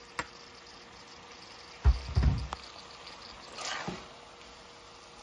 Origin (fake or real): real